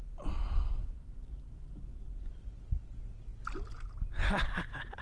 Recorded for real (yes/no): yes